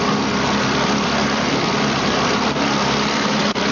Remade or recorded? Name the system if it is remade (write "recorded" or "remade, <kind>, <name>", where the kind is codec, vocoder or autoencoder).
remade, vocoder, BigVGAN v2